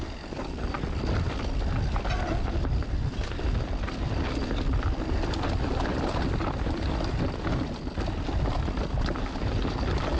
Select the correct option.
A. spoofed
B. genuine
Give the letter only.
B